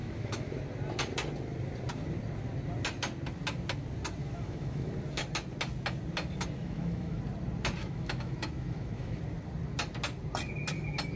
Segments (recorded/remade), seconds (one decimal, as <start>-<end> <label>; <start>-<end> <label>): 0.0-0.6 remade; 0.6-4.2 recorded; 4.2-4.9 remade; 4.9-6.6 recorded; 6.6-7.2 remade; 7.2-7.8 recorded; 7.8-9.2 remade; 9.2-11.2 recorded